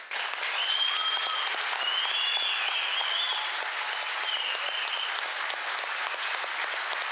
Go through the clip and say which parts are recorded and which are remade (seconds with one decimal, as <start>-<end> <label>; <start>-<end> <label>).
0.0-7.1 recorded